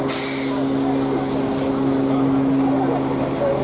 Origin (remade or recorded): recorded